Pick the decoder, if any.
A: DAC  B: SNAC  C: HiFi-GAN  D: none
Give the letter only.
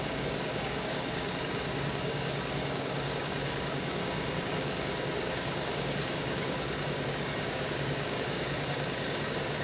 A